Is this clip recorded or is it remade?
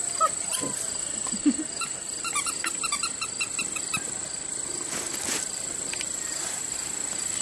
remade